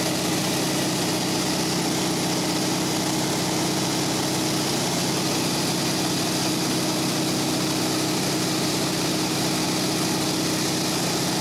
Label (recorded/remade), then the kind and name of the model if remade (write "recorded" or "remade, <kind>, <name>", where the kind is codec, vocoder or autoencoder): recorded